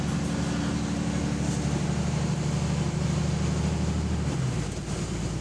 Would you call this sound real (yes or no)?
yes